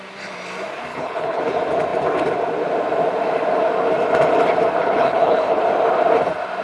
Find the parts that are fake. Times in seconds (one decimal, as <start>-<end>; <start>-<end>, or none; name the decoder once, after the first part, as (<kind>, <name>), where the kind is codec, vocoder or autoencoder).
0.9-1.4 (codec, HILCodec); 4.8-5.6